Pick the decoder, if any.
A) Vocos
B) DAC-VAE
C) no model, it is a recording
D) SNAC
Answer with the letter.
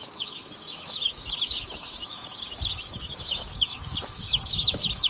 B